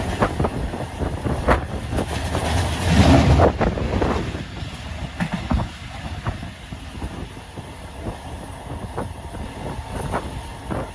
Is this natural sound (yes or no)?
yes